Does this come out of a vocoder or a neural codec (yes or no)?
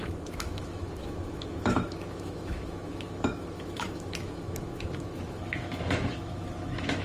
yes